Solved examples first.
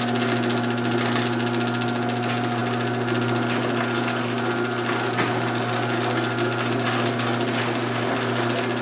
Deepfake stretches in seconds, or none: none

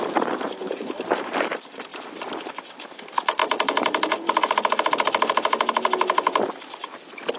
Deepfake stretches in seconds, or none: 0.0-1.9 (vocoder, BigVGAN v2); 2.4-3.4

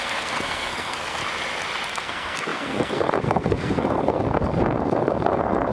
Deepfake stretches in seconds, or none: 0.0-1.2 (codec, SNAC); 1.9-5.7